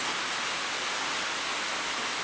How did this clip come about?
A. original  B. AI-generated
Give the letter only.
A